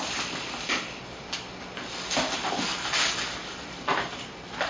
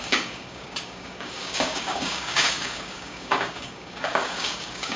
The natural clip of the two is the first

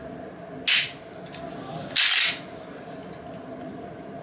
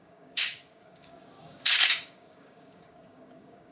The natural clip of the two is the first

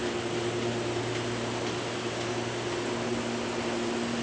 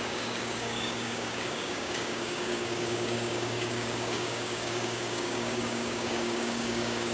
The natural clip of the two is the first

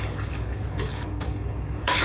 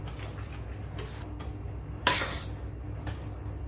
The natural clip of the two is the second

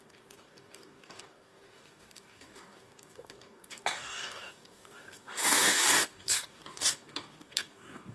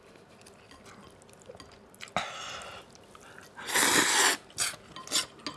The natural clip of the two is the second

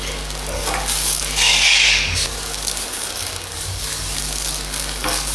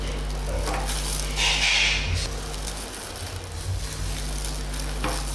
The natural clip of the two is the second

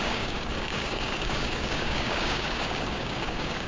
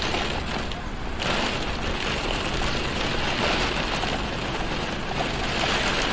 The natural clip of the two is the second